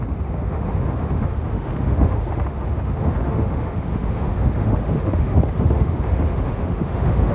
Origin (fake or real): fake